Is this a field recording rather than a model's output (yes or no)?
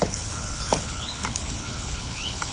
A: no